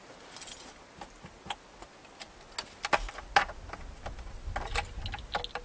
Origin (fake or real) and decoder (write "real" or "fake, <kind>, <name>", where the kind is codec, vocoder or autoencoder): real